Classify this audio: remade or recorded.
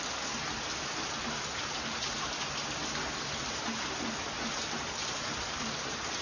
recorded